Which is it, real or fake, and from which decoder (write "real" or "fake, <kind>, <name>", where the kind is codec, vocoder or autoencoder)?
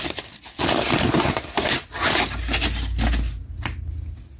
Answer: real